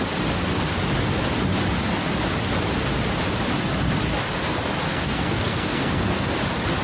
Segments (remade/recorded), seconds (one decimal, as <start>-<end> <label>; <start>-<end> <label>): 0.0-4.9 recorded; 4.9-6.3 remade; 6.3-6.8 recorded